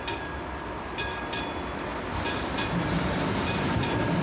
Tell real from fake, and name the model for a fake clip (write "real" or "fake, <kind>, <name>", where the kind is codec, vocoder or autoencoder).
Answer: real